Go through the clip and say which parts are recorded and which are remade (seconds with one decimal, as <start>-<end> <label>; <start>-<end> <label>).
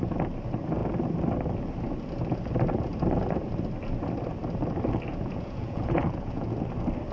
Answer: 0.0-5.1 recorded; 5.1-6.5 remade; 6.5-7.1 recorded